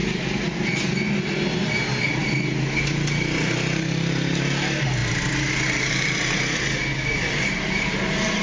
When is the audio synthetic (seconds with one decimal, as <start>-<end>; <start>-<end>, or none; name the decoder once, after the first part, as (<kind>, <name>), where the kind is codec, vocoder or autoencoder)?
none